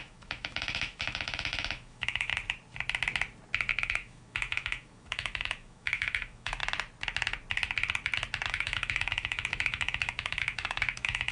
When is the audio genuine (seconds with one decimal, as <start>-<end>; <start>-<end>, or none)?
2.3-3.7; 6.6-8.5